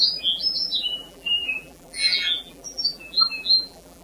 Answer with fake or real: fake